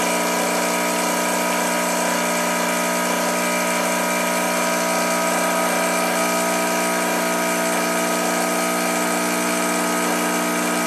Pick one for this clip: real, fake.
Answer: real